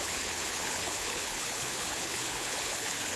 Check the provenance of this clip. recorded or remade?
remade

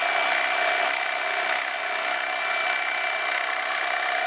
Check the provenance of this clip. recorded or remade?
recorded